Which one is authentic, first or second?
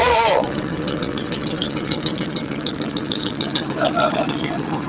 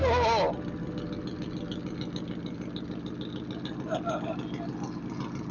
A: second